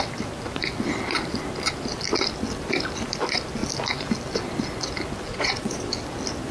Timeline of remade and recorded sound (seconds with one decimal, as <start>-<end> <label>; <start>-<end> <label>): 0.0-5.3 recorded; 5.3-5.9 remade; 5.9-6.5 recorded